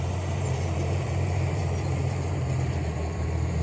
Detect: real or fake fake